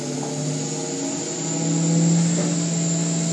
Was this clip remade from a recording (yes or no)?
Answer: no